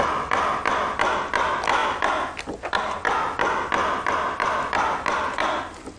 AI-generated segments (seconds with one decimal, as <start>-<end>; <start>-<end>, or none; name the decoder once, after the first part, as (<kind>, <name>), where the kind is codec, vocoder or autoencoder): 3.8-6.0 (vocoder, BigVGAN v2)